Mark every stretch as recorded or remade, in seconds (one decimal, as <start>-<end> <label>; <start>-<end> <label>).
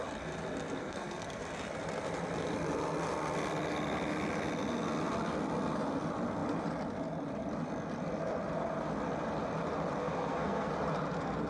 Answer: 0.0-0.8 recorded; 0.8-1.4 remade; 1.4-10.0 recorded; 10.0-10.7 remade; 10.7-11.5 recorded